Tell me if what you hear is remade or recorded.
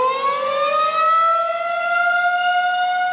recorded